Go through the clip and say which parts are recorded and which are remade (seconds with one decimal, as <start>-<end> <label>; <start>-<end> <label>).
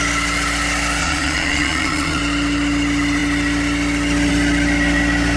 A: 0.0-1.0 recorded; 1.0-2.2 remade; 2.2-5.4 recorded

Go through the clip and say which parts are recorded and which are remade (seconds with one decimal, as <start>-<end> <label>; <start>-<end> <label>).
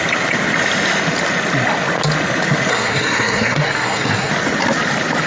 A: 0.0-2.7 recorded; 2.7-4.3 remade; 4.3-5.3 recorded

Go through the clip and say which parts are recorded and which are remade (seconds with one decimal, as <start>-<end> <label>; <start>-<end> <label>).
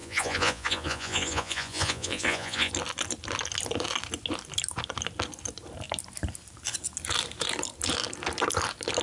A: 0.0-2.7 remade; 2.7-9.0 recorded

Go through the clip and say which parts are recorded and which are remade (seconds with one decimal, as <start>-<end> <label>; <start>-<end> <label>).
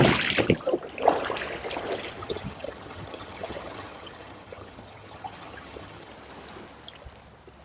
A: 0.0-2.2 recorded; 2.2-6.1 remade; 6.1-7.6 recorded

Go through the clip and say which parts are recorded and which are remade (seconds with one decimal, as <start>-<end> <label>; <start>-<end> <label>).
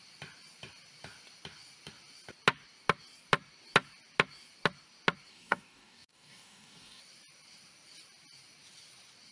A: 0.0-5.3 recorded; 5.3-7.0 remade; 7.0-9.3 recorded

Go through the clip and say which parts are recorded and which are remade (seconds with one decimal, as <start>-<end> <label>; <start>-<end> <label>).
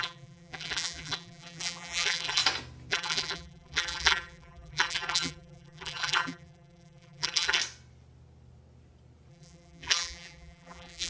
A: 0.0-2.4 remade; 2.4-2.9 recorded; 2.9-7.6 remade; 7.6-9.3 recorded; 9.3-11.1 remade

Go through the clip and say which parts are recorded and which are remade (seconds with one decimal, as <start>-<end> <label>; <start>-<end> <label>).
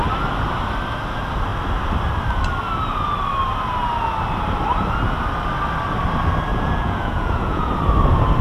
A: 0.0-6.5 recorded; 6.5-7.7 remade; 7.7-8.4 recorded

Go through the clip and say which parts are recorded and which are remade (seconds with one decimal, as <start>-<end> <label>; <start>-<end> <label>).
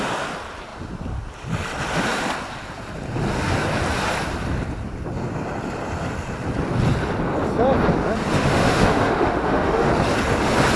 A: 0.0-8.3 recorded; 8.3-9.9 remade; 9.9-10.8 recorded